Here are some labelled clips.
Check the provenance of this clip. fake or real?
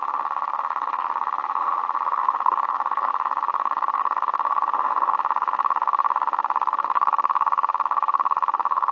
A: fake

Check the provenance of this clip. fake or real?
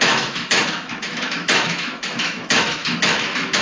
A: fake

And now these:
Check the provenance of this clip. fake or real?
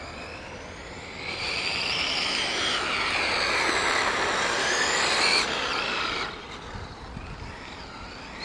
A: real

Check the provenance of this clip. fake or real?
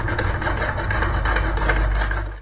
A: real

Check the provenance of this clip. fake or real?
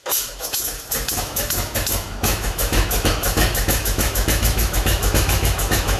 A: fake